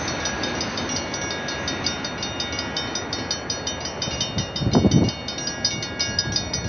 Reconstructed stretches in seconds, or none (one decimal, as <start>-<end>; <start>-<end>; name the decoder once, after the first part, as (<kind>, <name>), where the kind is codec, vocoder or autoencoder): none